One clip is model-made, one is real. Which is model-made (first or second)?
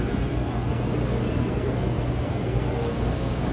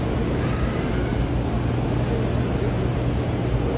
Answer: first